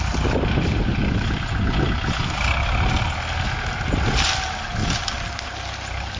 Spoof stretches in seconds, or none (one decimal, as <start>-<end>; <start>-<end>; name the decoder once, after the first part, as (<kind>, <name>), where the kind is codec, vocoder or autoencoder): none